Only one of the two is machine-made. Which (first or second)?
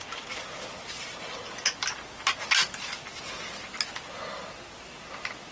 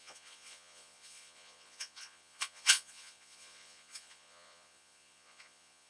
second